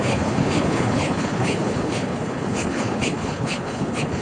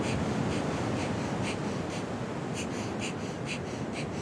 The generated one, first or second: first